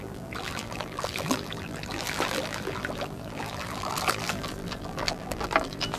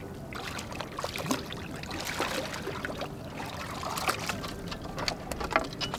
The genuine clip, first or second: second